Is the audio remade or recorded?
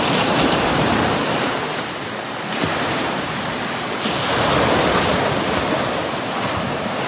recorded